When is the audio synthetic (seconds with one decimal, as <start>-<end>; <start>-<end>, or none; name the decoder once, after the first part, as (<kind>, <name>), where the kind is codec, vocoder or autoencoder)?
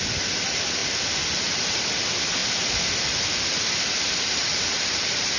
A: none